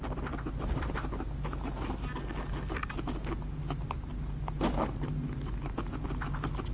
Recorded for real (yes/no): yes